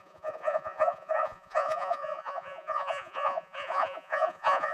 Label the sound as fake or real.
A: fake